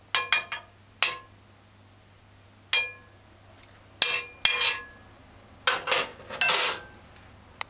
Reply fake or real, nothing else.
real